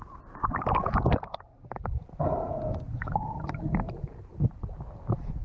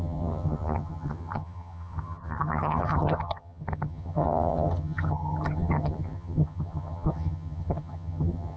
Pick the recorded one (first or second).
first